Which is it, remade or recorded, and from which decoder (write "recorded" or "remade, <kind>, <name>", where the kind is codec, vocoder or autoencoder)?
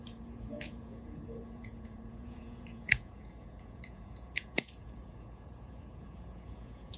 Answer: remade, vocoder, Vocos